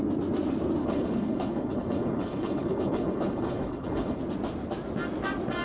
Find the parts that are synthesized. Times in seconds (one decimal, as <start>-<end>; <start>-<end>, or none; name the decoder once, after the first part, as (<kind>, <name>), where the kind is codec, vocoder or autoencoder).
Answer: 0.8-4.2 (codec, HILCodec)